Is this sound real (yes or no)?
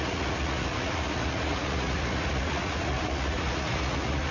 no